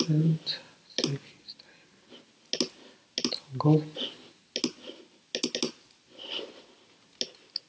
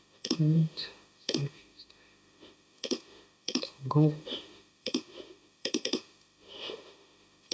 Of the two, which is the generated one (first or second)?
second